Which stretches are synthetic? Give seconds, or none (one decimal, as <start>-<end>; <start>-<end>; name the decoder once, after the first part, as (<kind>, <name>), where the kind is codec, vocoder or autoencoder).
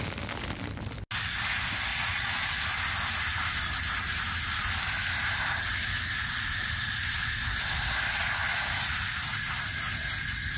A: 1.9-2.4 (vocoder, Vocos)